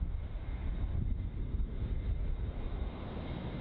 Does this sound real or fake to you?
real